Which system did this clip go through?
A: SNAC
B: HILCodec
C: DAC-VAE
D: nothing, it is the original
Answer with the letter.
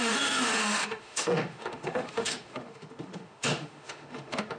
C